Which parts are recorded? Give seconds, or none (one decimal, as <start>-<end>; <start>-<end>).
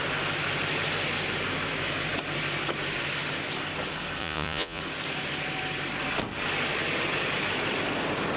0.0-4.2; 4.8-8.4